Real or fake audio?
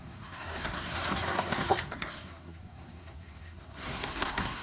fake